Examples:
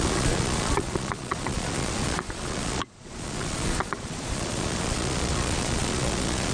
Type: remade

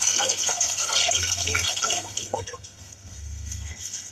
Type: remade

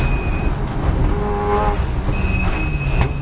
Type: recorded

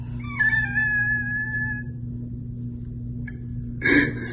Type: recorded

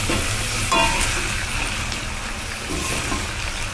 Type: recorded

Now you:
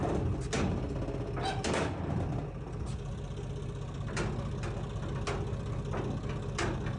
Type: recorded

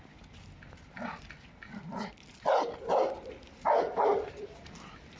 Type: recorded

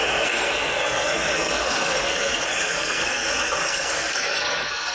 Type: remade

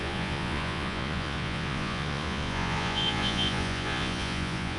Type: remade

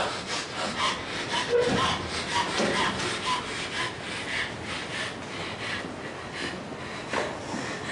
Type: recorded